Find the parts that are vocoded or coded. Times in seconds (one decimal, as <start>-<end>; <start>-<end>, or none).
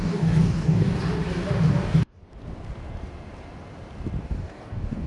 0.0-1.0; 1.7-2.2; 4.2-5.1